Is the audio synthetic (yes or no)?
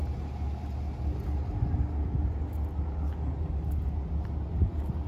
no